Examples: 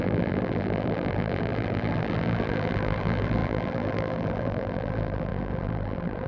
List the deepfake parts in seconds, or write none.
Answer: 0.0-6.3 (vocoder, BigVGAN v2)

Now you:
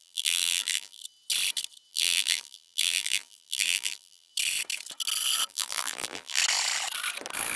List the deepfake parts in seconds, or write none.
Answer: 0.0-1.0 (vocoder, BigVGAN v2); 1.9-4.3; 5.5-6.4

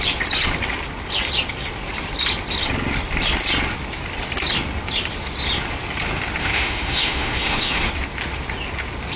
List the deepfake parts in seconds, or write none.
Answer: 6.4-7.9 (autoencoder, DAC-VAE)

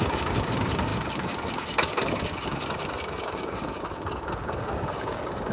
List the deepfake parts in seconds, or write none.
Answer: 0.0-5.5 (codec, DAC)